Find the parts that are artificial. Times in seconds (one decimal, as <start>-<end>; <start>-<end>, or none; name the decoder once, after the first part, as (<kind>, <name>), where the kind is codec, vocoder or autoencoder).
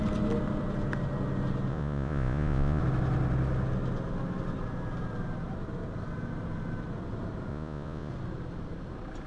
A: 1.7-2.8 (vocoder, Vocos); 7.5-8.1